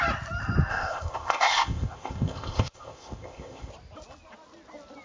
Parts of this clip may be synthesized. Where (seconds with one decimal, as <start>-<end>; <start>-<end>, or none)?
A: 0.7-3.7